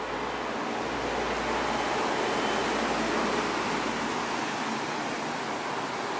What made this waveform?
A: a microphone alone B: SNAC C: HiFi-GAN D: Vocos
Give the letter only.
A